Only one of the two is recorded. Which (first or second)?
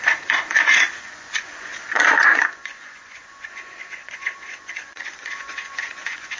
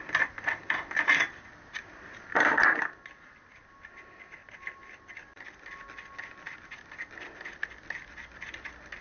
second